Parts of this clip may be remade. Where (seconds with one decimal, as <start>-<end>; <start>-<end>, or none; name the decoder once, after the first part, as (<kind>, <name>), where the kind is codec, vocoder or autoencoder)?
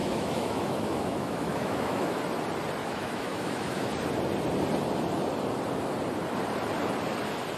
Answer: 0.0-2.2 (autoencoder, DAC-VAE); 2.8-3.9